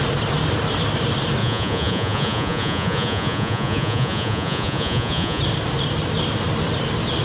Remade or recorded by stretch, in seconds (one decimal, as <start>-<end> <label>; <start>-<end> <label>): 0.0-1.4 recorded; 1.4-5.4 remade; 5.4-7.2 recorded